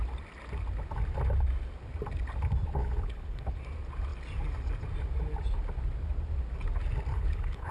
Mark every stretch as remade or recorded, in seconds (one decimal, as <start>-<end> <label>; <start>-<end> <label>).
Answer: 0.0-2.8 recorded; 2.8-3.6 remade; 3.6-7.1 recorded; 7.1-7.7 remade